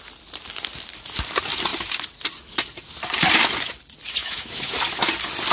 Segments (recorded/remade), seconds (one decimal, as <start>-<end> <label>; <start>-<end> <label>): 0.0-4.2 recorded; 4.2-4.8 remade; 4.8-5.5 recorded